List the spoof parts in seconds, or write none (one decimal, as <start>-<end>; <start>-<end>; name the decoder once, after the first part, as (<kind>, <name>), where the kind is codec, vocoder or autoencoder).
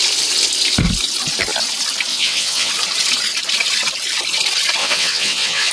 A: 2.1-2.7 (vocoder, WaveNeXt); 4.8-5.7